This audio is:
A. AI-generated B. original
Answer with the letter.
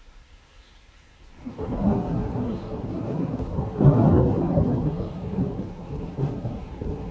A